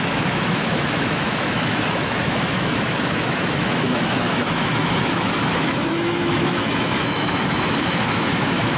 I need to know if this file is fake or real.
fake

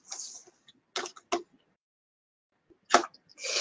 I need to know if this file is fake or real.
real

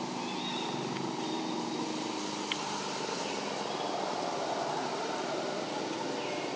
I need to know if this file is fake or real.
real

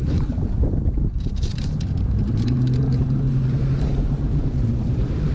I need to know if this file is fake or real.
fake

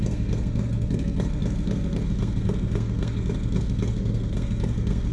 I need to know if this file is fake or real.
fake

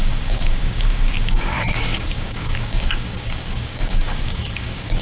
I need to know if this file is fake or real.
fake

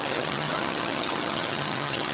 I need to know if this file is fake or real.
fake